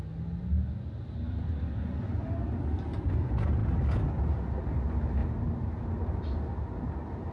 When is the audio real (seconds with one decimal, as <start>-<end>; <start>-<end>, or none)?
0.0-7.3